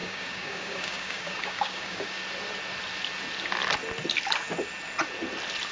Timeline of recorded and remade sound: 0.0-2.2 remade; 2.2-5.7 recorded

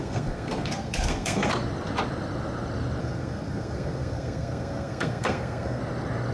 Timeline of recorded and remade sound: 0.0-1.5 remade; 1.5-3.0 recorded; 3.0-5.8 remade; 5.8-6.3 recorded

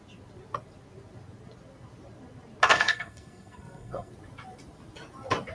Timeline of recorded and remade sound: 0.0-2.7 recorded; 2.7-4.1 remade; 4.1-5.5 recorded

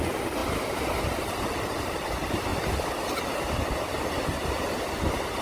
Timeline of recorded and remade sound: 0.0-5.4 recorded

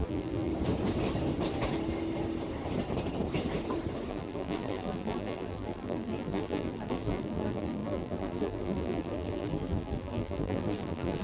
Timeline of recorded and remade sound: 0.0-0.5 remade; 0.5-4.1 recorded; 4.1-11.2 remade

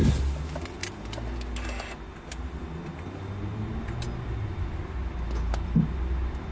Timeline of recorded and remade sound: 0.0-6.5 recorded

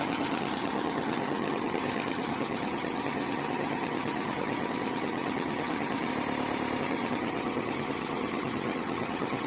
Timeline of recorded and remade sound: 0.0-6.1 remade; 6.1-6.8 recorded; 6.8-9.5 remade

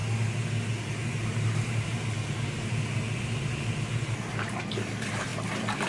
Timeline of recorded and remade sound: 0.0-1.1 recorded; 1.1-5.3 remade; 5.3-5.9 recorded